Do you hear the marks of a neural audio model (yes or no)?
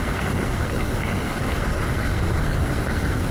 yes